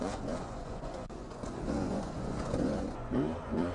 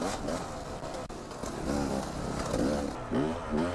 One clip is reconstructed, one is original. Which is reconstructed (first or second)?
first